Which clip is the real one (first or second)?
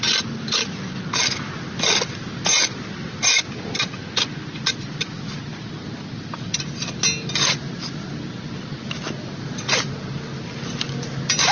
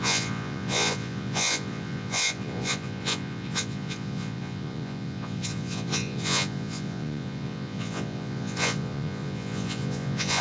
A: first